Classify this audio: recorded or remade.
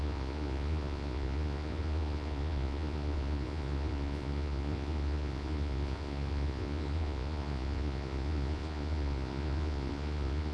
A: remade